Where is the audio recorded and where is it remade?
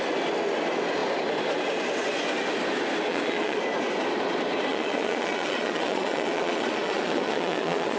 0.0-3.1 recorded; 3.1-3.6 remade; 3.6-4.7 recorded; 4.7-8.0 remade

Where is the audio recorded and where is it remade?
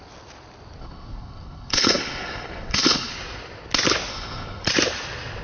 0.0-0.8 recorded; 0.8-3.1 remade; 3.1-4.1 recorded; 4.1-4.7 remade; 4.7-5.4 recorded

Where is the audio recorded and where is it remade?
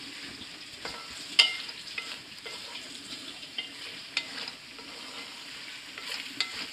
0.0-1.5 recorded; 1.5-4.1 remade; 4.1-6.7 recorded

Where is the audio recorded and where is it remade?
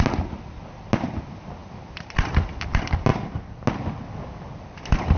0.0-5.2 recorded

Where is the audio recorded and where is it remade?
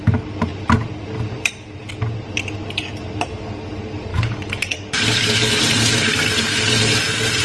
0.0-4.1 recorded; 4.1-5.6 remade; 5.6-7.4 recorded